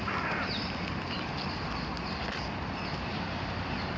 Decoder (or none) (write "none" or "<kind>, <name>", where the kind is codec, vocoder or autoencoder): none